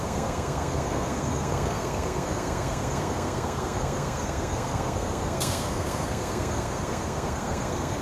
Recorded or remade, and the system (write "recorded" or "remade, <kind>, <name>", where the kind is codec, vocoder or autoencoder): remade, codec, SNAC